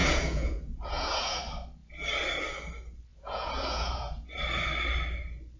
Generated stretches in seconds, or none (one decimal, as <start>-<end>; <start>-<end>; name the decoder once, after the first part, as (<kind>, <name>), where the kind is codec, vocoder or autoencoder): 0.0-1.4 (vocoder, Vocos); 3.1-4.4